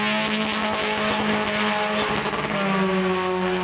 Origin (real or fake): real